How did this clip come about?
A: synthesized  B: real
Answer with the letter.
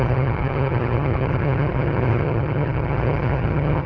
A